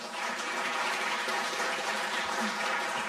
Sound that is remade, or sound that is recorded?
remade